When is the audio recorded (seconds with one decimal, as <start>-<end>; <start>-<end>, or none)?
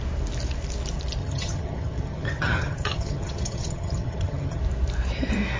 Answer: 0.0-1.2; 4.6-5.6